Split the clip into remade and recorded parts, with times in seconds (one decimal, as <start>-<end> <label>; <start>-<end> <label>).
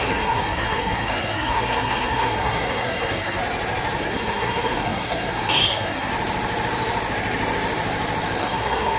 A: 0.0-3.4 remade; 3.4-4.0 recorded; 4.0-6.1 remade; 6.1-8.4 recorded; 8.4-9.0 remade